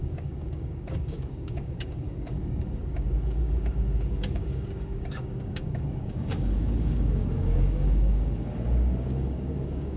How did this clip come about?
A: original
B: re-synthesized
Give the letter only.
B